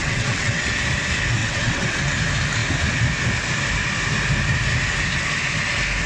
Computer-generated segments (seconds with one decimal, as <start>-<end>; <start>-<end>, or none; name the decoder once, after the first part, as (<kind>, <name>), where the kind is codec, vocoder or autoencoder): 0.0-0.7 (vocoder, WaveNeXt); 1.4-2.0